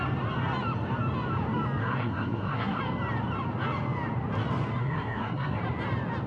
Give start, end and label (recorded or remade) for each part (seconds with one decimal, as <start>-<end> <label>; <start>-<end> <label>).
0.0-1.8 recorded; 1.8-2.8 remade; 2.8-4.8 recorded; 4.8-5.6 remade; 5.6-6.3 recorded